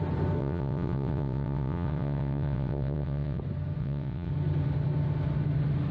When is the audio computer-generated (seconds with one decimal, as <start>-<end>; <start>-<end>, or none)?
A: 0.4-3.4; 3.8-4.3